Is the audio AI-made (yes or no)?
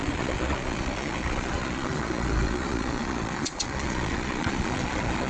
yes